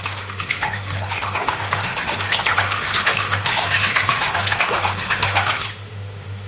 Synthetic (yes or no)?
yes